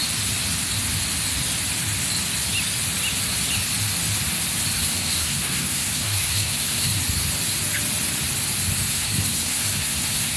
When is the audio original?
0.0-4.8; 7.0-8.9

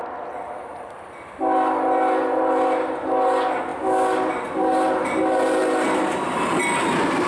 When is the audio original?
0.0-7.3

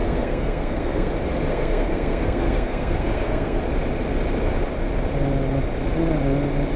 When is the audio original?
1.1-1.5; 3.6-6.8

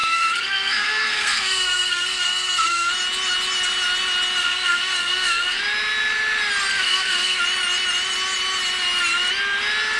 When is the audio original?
2.9-4.4; 5.6-6.7; 7.4-10.0

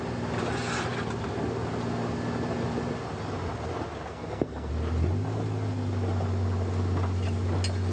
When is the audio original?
0.0-4.1; 4.7-7.9